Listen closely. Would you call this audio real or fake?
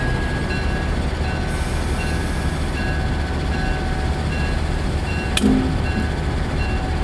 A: real